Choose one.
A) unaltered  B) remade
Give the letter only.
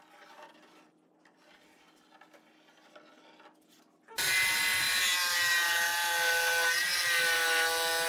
A